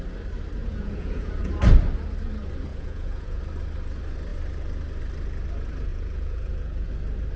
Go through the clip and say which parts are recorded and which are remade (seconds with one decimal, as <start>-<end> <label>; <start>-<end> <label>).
0.0-0.6 recorded; 0.6-1.5 remade; 1.5-2.7 recorded; 2.7-3.4 remade; 3.4-5.9 recorded; 5.9-6.9 remade; 6.9-7.4 recorded